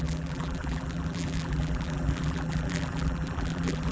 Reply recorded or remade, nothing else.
remade